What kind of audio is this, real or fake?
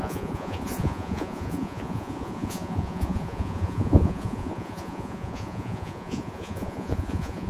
fake